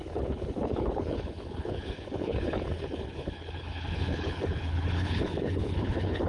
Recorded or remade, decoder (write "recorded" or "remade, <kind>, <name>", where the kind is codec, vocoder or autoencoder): remade, codec, HILCodec